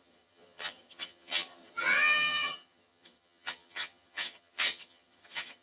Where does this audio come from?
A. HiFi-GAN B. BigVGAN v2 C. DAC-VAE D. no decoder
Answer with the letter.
A